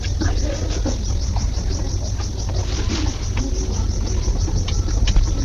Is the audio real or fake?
real